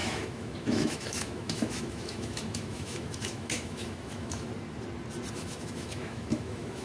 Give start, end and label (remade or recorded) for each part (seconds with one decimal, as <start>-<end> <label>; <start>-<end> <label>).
0.0-4.5 remade; 4.5-5.3 recorded; 5.3-6.8 remade